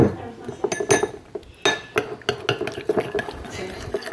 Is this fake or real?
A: real